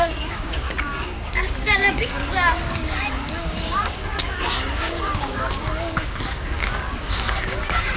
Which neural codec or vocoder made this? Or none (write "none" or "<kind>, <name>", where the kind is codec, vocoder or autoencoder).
codec, DAC